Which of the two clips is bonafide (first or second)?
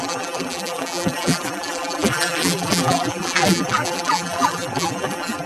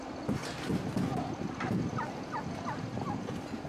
second